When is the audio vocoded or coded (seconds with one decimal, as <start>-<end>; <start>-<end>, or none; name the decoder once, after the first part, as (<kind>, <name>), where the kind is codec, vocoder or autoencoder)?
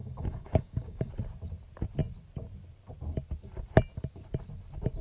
0.0-1.1 (codec, DAC)